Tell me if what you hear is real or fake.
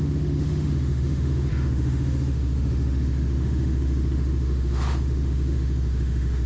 fake